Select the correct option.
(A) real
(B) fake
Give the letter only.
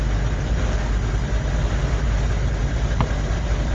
A